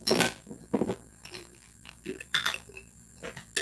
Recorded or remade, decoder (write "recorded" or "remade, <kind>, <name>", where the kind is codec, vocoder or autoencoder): remade, vocoder, BigVGAN v2